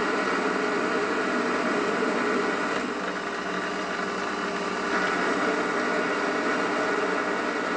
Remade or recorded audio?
recorded